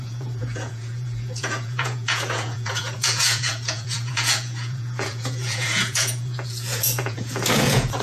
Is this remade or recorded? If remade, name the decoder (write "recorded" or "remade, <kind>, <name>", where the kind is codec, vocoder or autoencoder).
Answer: remade, vocoder, Vocos